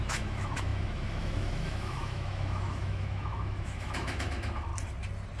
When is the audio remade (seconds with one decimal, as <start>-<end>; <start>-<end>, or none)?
0.0-4.7